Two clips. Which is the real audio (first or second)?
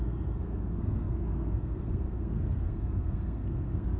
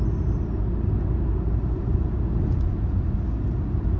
second